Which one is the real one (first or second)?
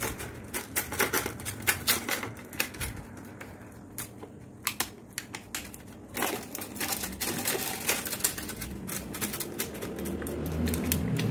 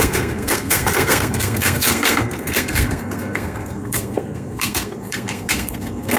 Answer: first